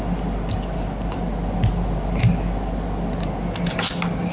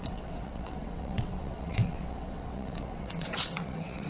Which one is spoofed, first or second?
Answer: second